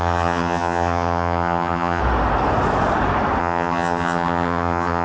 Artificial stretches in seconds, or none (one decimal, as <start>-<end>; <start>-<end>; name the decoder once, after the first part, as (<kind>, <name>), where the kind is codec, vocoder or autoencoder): 0.0-2.0 (vocoder, HiFi-GAN); 3.4-5.0